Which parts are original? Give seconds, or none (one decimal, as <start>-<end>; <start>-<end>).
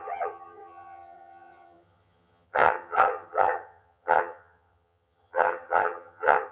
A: none